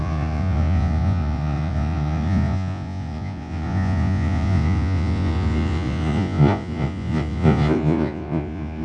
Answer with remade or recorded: remade